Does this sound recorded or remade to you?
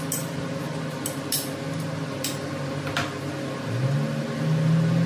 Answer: recorded